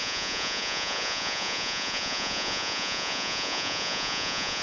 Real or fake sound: fake